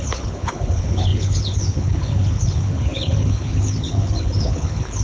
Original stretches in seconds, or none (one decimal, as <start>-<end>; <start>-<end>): none

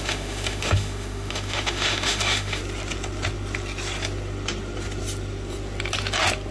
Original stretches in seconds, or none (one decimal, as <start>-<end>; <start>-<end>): 2.6-6.5

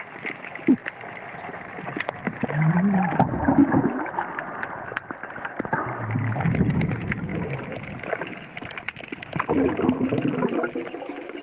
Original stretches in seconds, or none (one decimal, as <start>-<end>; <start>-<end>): 0.0-11.4

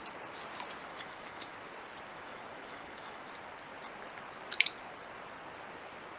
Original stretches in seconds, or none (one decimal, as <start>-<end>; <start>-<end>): 0.0-0.9; 1.5-2.1; 3.3-6.2

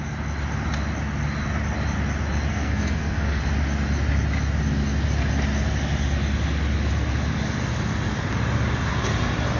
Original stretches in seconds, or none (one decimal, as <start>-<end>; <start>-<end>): 0.0-2.5; 3.4-9.6

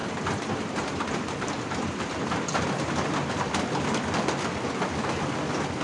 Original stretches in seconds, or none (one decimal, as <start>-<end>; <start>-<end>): 3.5-5.8